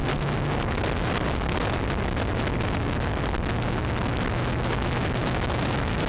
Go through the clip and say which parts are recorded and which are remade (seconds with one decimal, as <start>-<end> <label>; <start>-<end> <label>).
0.0-6.1 recorded